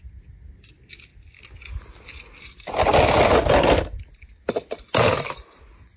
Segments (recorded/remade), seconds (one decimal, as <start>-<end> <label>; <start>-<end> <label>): 0.0-6.0 recorded